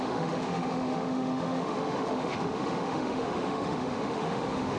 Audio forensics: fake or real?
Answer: fake